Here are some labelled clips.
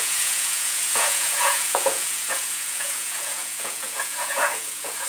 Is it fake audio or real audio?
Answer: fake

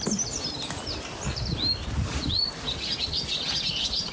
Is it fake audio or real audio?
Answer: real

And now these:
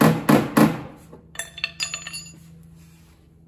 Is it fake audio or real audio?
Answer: real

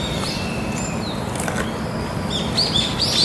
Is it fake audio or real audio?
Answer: real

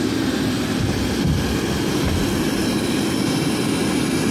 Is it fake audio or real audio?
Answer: fake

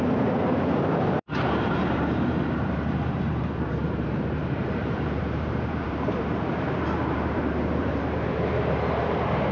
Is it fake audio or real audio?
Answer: fake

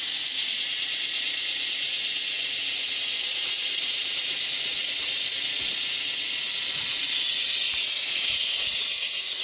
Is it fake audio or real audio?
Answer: fake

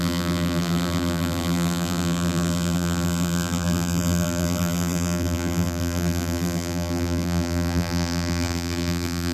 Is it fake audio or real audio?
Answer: fake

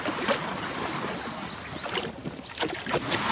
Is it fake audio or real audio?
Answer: real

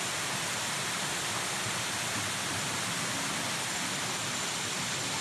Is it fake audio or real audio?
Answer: real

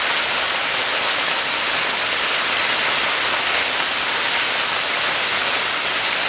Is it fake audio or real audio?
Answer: real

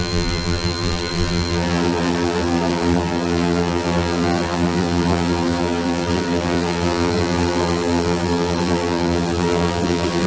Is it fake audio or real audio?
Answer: fake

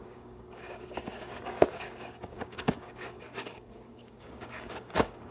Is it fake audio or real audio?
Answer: fake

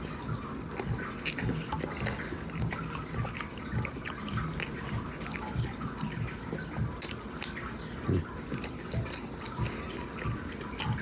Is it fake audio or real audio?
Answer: real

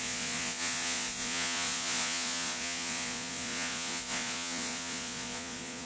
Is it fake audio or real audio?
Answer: fake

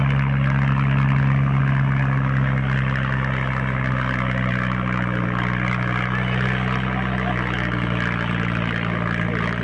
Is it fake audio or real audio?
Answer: real